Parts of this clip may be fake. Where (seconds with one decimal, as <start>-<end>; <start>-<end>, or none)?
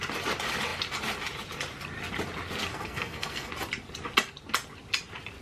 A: 2.7-3.5